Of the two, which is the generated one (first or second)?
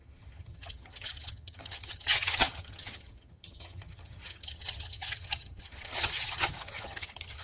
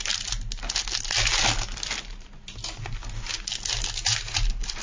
first